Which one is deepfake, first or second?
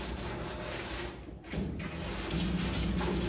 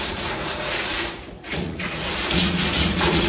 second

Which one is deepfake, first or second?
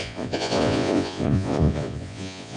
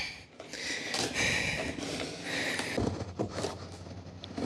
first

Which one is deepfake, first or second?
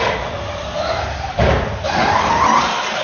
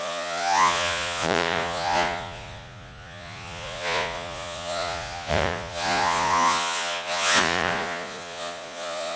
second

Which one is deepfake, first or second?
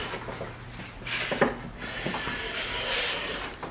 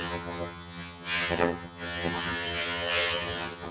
second